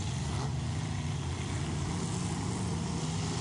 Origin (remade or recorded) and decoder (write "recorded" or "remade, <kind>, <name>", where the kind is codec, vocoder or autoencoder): recorded